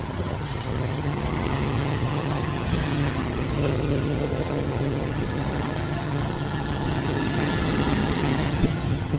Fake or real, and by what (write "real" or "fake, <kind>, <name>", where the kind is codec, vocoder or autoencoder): fake, vocoder, HiFi-GAN